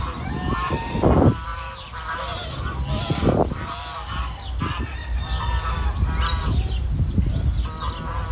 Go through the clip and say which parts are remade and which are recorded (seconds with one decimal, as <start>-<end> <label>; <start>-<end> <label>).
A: 0.0-8.3 recorded

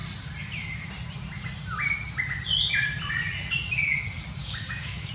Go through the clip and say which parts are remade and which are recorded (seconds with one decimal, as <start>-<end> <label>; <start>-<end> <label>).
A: 0.0-4.4 recorded; 4.4-5.1 remade

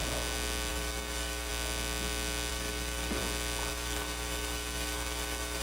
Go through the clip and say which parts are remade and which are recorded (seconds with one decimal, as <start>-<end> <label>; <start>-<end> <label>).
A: 0.0-0.7 recorded; 0.7-1.5 remade; 1.5-2.5 recorded; 2.5-3.2 remade; 3.2-3.7 recorded; 3.7-5.6 remade

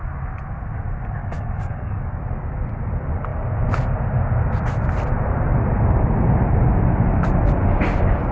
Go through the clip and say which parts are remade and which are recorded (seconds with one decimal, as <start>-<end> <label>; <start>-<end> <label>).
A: 0.0-1.2 recorded; 1.2-2.2 remade; 2.2-8.3 recorded